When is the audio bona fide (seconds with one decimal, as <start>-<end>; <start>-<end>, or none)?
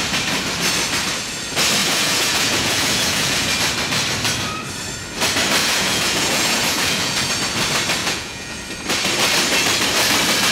0.0-1.8; 3.5-5.6; 7.3-8.0; 8.6-10.5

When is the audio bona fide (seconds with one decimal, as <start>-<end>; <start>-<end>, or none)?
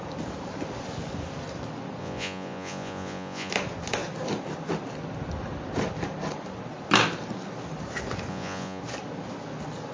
0.0-2.0; 3.5-8.3; 8.8-9.9